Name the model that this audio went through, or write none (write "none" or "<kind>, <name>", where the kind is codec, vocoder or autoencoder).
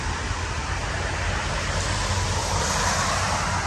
none